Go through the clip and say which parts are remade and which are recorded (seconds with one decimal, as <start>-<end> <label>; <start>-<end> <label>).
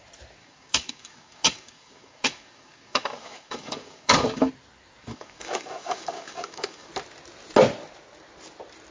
0.0-0.4 recorded; 0.4-4.5 remade; 4.5-5.1 recorded; 5.1-6.9 remade; 6.9-8.9 recorded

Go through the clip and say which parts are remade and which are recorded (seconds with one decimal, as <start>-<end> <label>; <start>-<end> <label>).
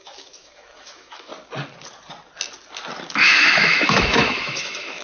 0.0-1.3 remade; 1.3-3.2 recorded; 3.2-5.0 remade